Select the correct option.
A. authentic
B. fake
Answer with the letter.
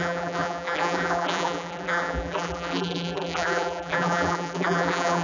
B